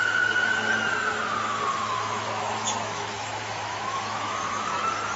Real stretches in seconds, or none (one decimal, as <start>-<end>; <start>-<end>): 0.0-1.7; 4.8-5.2